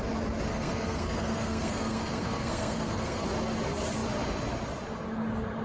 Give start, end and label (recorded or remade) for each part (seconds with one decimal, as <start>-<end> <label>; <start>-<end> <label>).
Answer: 0.0-0.5 recorded; 0.5-3.2 remade; 3.2-5.6 recorded